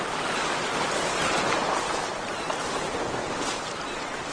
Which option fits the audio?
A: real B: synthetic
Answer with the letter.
A